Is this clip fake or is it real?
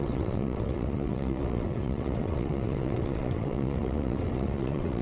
fake